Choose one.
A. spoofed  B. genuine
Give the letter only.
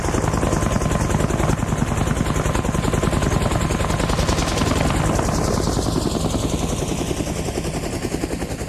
B